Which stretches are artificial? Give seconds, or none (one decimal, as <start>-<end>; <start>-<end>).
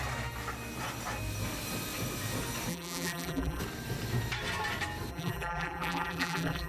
2.7-3.6; 5.1-6.7